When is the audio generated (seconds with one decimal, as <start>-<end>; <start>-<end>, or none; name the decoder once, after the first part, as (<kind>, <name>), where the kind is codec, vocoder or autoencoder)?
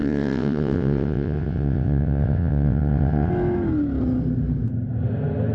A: 0.0-3.3 (vocoder, WaveNeXt)